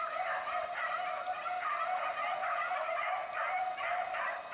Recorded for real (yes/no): yes